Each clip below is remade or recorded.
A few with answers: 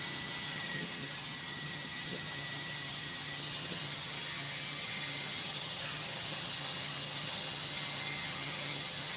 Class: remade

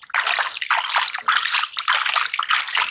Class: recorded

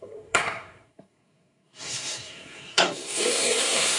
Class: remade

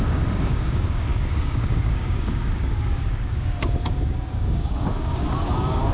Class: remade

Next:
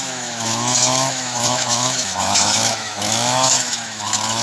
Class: remade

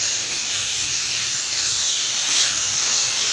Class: remade